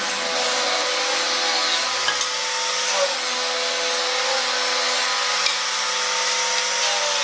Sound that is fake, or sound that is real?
real